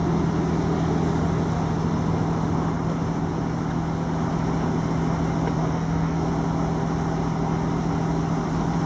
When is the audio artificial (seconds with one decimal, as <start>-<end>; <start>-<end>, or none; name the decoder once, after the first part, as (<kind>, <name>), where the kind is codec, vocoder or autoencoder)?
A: 5.6-6.3 (codec, SNAC)